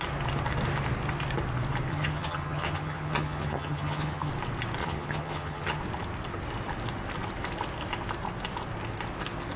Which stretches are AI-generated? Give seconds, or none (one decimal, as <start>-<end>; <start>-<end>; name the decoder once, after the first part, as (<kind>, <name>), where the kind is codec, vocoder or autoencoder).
1.9-4.3 (vocoder, HiFi-GAN); 4.8-5.8